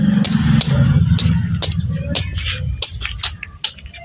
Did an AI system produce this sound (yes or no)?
no